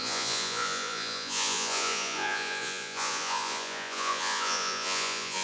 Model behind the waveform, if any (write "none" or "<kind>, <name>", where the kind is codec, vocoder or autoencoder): vocoder, Vocos